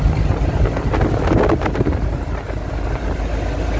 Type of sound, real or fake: real